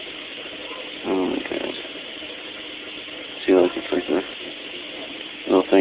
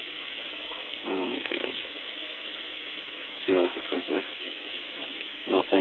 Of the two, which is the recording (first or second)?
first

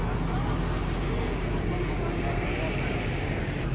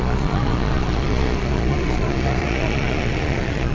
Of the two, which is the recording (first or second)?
first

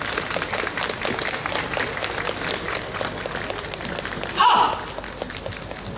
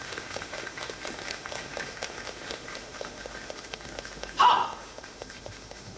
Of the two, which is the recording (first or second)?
first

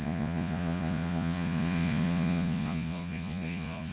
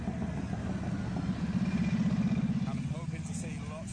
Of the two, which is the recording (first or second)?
second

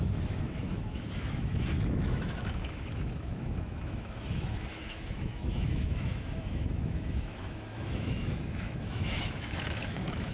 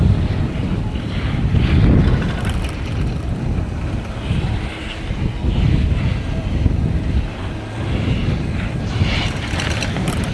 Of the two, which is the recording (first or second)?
second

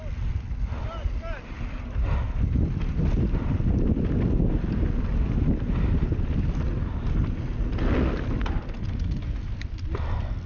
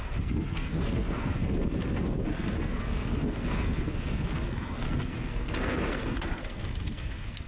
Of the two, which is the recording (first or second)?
first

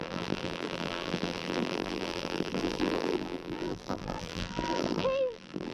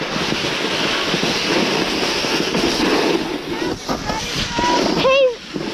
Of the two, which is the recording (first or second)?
second